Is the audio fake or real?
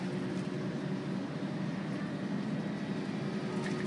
real